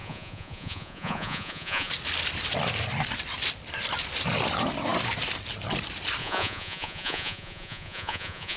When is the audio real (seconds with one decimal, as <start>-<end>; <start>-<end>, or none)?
1.9-6.2